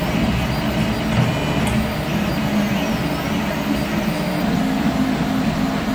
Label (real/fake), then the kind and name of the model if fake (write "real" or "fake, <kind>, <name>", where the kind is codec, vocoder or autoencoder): real